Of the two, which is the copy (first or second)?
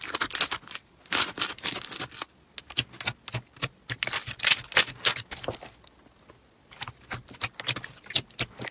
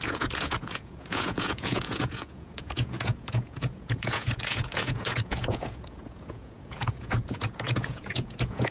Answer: second